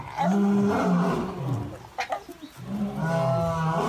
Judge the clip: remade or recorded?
recorded